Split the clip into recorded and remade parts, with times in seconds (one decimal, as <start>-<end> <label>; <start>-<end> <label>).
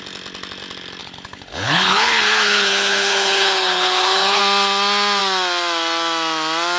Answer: 0.0-1.0 recorded; 1.0-4.4 remade; 4.4-6.8 recorded